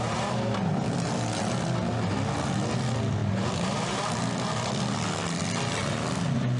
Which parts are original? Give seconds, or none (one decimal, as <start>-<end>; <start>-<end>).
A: 0.0-6.6